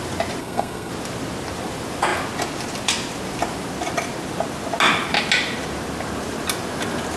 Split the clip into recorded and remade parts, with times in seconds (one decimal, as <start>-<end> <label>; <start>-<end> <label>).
0.0-0.4 recorded; 0.4-0.9 remade; 0.9-7.2 recorded